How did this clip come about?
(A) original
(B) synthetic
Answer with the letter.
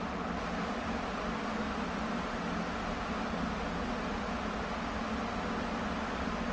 A